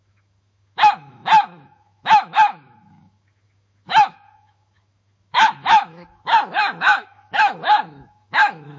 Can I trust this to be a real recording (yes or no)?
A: no